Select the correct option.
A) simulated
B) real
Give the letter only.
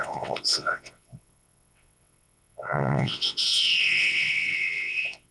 A